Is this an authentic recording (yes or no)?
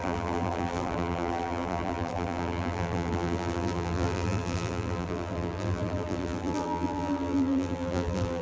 no